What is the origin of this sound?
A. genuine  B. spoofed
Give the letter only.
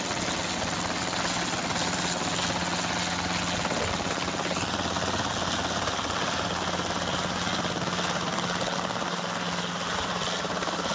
A